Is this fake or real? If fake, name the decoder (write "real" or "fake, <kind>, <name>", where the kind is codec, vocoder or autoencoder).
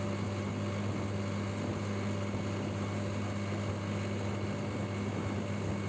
real